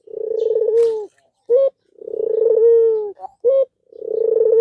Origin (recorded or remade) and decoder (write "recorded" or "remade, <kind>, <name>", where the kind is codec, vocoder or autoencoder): recorded